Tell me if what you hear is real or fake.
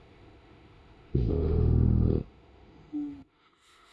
fake